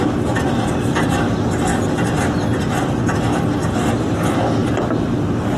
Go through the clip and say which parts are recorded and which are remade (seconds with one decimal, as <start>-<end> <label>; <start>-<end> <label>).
0.0-5.6 recorded